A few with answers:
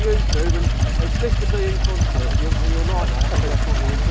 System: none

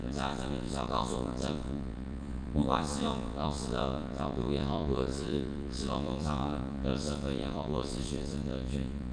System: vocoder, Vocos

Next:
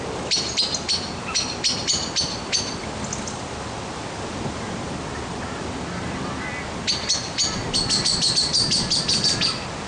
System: none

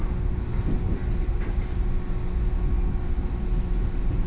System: none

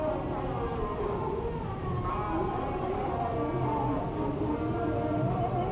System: none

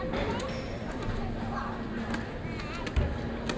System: none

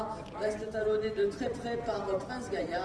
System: none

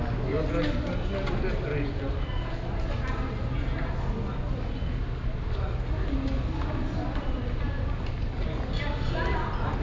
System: none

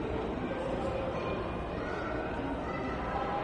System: none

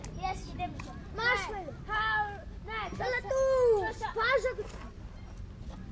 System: none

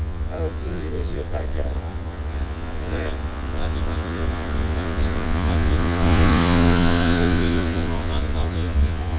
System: vocoder, Vocos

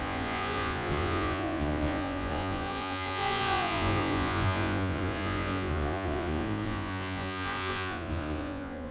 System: vocoder, Vocos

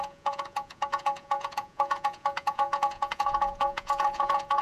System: vocoder, Vocos